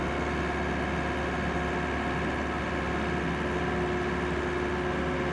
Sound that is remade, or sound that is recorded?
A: recorded